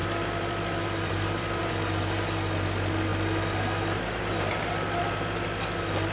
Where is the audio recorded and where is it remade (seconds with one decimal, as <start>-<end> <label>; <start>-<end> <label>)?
0.0-1.7 remade; 1.7-6.1 recorded